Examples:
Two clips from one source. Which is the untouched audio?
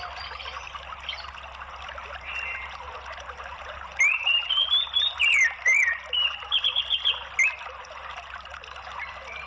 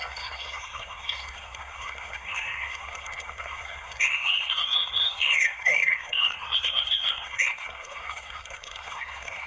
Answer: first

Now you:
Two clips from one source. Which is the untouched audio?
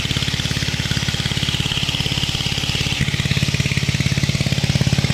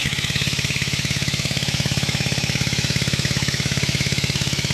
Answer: first